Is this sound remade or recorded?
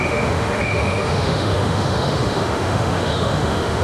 remade